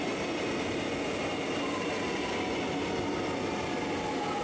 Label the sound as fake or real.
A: real